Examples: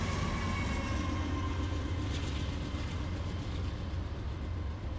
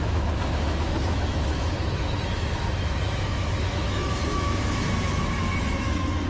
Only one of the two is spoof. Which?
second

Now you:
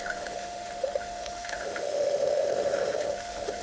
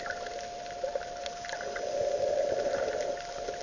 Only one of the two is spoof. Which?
first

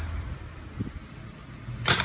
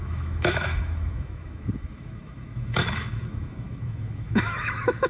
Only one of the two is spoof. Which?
second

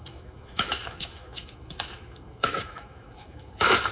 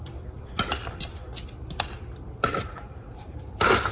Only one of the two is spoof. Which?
first